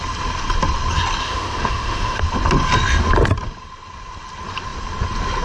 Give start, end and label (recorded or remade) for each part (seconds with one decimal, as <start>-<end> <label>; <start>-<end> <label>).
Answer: 0.0-1.2 recorded; 1.2-2.2 remade; 2.2-5.4 recorded